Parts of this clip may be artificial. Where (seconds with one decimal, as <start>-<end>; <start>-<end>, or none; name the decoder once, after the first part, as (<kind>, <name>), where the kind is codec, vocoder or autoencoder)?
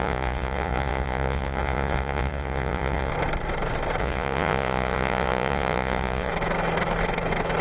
0.0-3.1 (vocoder, Vocos); 4.0-6.3